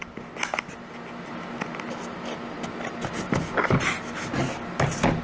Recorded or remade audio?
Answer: recorded